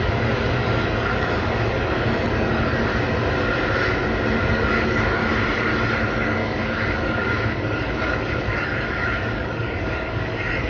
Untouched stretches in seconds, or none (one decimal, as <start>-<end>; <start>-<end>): 2.9-4.4; 5.2-6.1